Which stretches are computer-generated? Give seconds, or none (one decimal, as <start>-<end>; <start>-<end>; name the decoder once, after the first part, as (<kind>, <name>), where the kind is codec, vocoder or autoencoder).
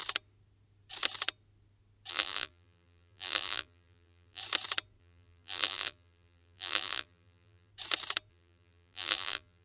2.1-4.4 (vocoder, BigVGAN v2); 5.0-7.7; 8.3-9.6